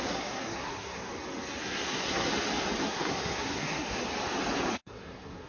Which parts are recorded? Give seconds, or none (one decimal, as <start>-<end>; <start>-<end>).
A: 1.1-1.6; 2.3-2.8; 4.1-4.7